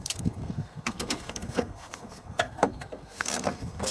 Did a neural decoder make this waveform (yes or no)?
yes